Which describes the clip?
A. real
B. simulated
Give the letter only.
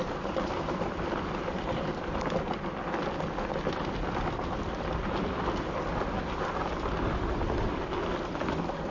A